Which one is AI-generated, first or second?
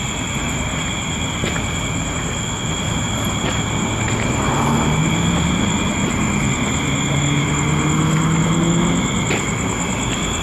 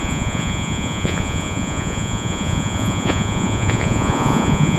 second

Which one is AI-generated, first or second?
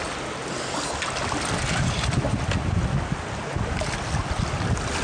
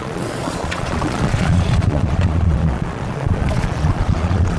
second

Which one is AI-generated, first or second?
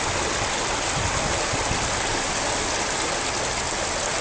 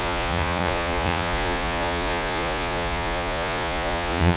second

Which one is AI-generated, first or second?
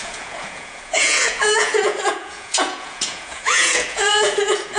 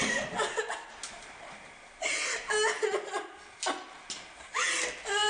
first